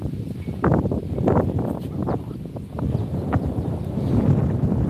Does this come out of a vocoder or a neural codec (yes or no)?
no